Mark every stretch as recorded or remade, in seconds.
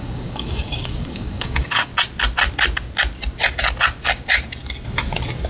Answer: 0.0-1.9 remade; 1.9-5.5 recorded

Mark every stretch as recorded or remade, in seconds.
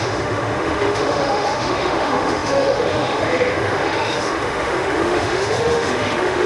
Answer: 0.0-6.5 remade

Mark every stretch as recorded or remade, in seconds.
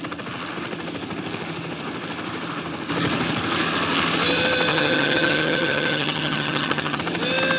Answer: 0.0-4.7 recorded; 4.7-7.0 remade; 7.0-7.6 recorded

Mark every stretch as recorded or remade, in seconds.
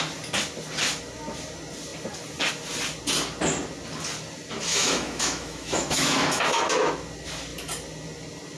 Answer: 0.0-4.7 recorded; 4.7-6.6 remade; 6.6-8.6 recorded